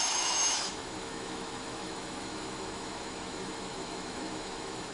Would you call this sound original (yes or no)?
no